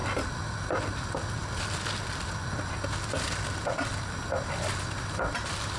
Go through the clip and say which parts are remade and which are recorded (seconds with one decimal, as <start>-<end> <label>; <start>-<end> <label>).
0.0-5.8 recorded